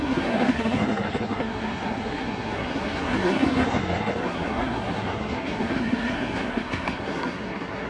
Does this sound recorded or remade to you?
remade